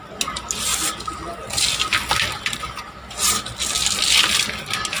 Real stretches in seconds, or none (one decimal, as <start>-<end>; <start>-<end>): 0.0-5.0